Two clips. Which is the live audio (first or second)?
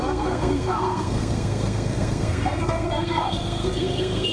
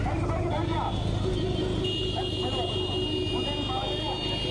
second